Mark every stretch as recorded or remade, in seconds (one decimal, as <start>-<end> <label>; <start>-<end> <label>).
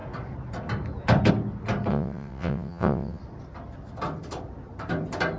0.0-1.9 recorded; 1.9-3.2 remade; 3.2-5.4 recorded